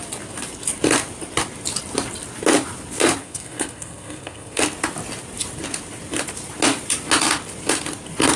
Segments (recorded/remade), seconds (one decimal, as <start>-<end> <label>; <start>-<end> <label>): 0.0-3.2 recorded; 3.2-4.6 remade; 4.6-8.4 recorded